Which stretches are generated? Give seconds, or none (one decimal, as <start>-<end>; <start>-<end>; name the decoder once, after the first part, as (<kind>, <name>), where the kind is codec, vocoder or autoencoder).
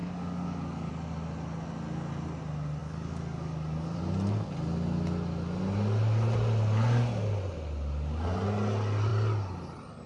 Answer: 0.0-0.9 (codec, DAC); 2.8-4.0